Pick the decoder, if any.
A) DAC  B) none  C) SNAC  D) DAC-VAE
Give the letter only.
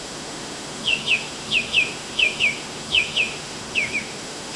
D